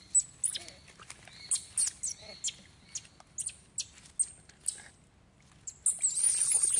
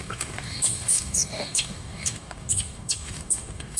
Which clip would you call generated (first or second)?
second